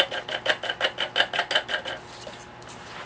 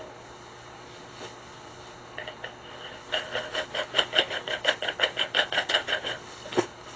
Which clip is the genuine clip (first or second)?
first